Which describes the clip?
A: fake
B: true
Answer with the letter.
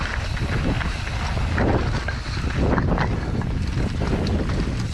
B